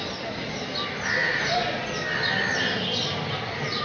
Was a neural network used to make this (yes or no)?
no